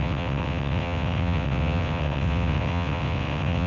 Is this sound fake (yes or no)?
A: yes